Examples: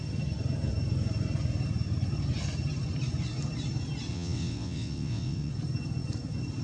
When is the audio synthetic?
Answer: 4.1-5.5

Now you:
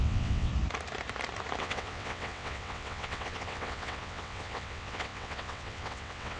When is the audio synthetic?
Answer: 0.0-0.5; 1.6-6.4

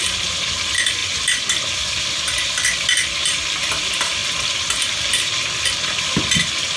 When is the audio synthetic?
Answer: none

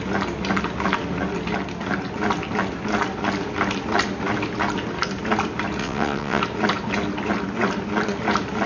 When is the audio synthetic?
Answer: 5.8-6.4

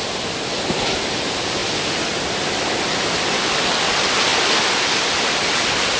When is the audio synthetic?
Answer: none

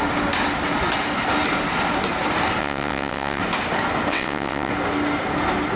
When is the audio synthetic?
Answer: 2.6-3.4; 4.1-4.7

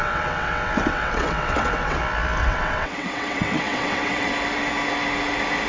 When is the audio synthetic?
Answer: 0.0-2.0; 2.4-4.3

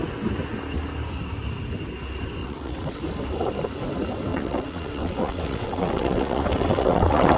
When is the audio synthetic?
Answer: 2.4-3.0; 4.3-7.4